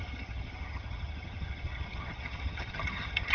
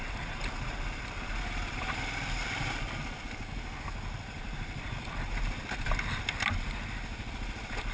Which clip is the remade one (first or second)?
first